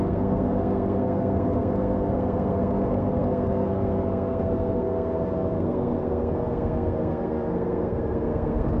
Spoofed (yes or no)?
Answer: yes